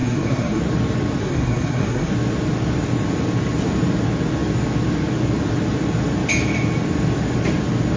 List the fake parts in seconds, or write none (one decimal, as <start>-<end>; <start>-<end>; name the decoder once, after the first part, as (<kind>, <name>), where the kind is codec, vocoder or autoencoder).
0.0-0.6 (codec, SNAC); 1.2-2.1